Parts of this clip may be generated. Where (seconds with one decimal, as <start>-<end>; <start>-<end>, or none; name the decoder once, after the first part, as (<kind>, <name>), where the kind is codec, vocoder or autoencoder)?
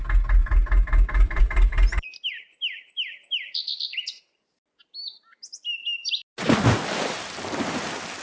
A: 0.4-1.4 (vocoder, BigVGAN v2)